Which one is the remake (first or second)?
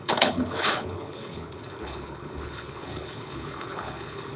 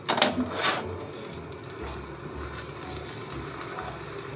first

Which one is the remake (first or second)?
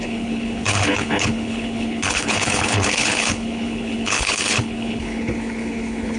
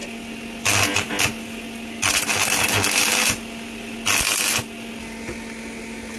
first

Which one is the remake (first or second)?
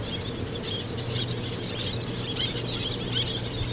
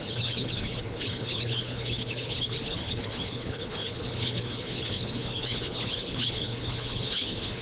second